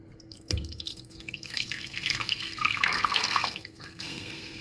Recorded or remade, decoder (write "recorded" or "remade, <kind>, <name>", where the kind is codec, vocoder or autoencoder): remade, codec, SNAC